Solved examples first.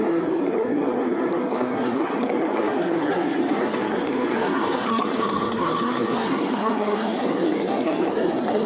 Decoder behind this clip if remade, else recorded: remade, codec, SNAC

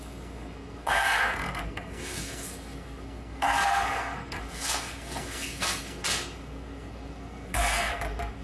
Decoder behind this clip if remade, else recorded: remade, codec, SNAC